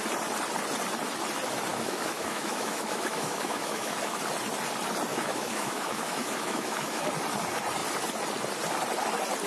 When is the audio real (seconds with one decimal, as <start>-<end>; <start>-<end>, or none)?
0.0-1.7; 4.2-5.1; 7.1-9.5